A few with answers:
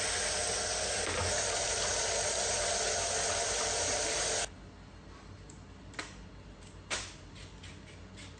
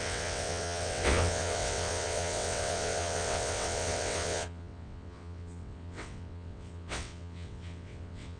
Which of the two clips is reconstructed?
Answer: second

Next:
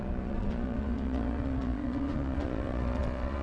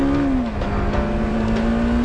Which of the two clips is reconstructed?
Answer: first